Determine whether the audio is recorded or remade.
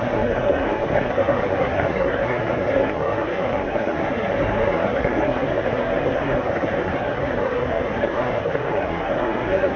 remade